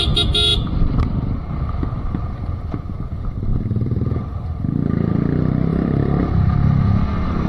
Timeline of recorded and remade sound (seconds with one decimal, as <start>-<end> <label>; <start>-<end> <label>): 0.0-3.5 recorded; 3.5-4.2 remade; 4.2-5.7 recorded; 5.7-6.2 remade; 6.2-7.5 recorded